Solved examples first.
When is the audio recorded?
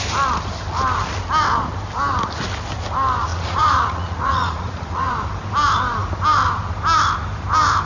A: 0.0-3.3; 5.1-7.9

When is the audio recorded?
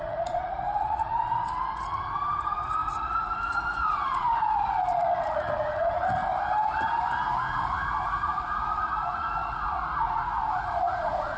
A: 6.2-7.3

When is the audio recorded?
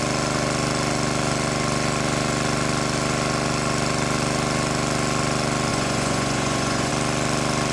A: 0.0-5.7; 6.9-7.7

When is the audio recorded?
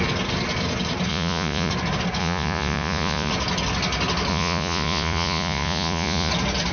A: 0.0-1.1; 1.7-2.2; 3.3-4.3; 6.3-6.7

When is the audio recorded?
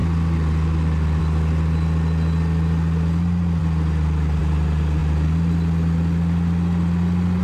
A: 0.0-7.4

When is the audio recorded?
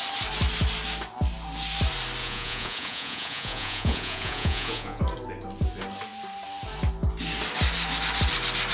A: 0.0-2.2; 5.0-8.7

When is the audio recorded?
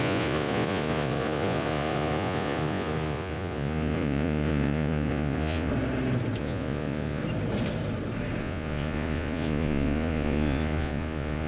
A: 5.7-6.4; 7.2-8.4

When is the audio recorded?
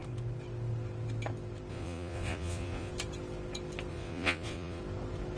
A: 0.0-1.7; 2.9-3.9; 4.8-5.4